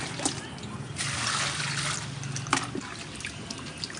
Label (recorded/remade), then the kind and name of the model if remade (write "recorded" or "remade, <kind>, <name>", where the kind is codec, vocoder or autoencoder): recorded